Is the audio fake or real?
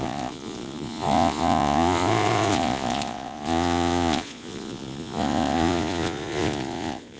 fake